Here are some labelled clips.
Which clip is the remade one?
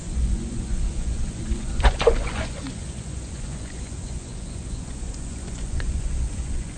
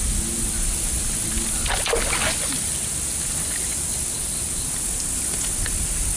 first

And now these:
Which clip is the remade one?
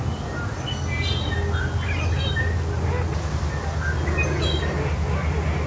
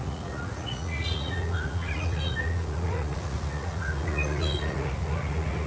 second